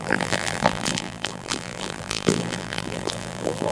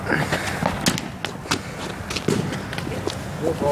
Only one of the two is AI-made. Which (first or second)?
first